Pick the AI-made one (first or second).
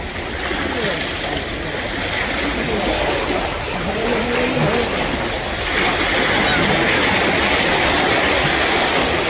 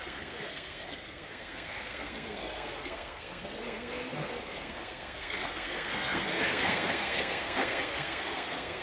second